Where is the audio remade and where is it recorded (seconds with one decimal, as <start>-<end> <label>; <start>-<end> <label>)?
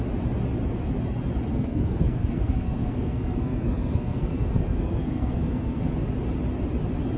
0.0-1.5 recorded; 1.5-5.8 remade; 5.8-7.2 recorded